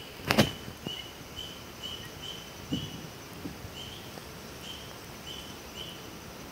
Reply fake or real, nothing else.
real